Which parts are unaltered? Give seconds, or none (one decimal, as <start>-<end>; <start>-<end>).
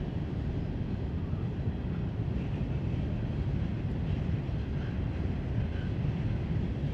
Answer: 0.0-6.9